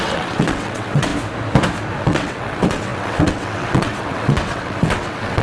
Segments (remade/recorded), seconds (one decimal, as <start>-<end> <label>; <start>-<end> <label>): 0.0-1.1 remade; 1.1-2.0 recorded; 2.0-5.4 remade